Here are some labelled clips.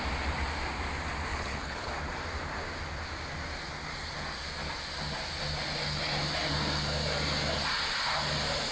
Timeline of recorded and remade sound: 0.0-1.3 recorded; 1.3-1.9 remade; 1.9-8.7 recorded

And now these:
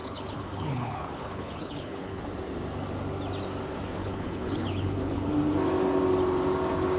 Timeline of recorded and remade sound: 0.0-2.2 remade; 2.2-4.0 recorded; 4.0-5.3 remade; 5.3-7.0 recorded

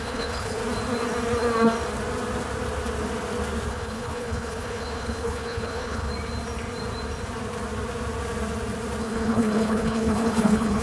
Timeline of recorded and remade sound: 0.0-0.6 remade; 0.6-3.7 recorded; 3.7-6.1 remade; 6.1-9.0 recorded; 9.0-10.8 remade

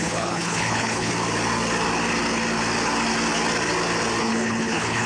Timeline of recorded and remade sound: 0.0-1.1 remade; 1.1-4.2 recorded; 4.2-5.1 remade

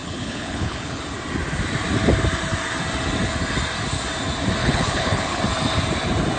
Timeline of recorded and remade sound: 0.0-1.0 remade; 1.0-4.6 recorded; 4.6-5.4 remade; 5.4-6.4 recorded